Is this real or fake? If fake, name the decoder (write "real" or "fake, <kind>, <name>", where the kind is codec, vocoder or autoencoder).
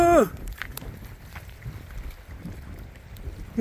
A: real